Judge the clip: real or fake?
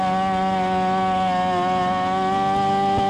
real